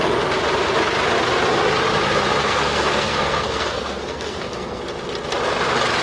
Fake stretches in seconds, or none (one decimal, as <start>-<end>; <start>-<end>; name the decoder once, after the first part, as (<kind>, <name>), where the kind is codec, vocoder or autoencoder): 2.4-4.8 (codec, SNAC)